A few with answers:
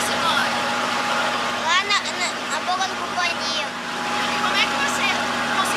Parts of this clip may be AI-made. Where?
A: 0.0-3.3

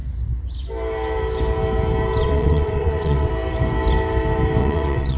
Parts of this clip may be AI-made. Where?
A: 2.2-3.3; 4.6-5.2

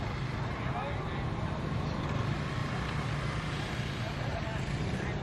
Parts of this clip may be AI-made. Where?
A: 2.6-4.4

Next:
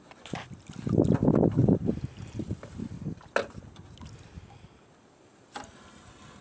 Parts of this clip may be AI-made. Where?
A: 1.6-3.2

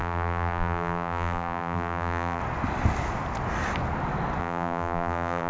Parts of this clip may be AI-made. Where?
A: 0.0-2.4; 4.4-5.5

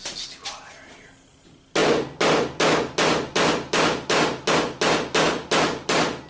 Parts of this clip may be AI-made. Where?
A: none